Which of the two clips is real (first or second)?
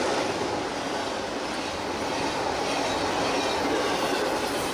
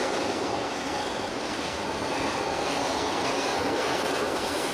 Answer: first